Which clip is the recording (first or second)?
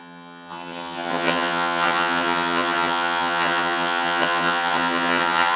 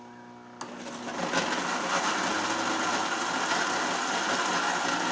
second